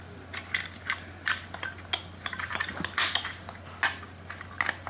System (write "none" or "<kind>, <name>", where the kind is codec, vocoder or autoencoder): none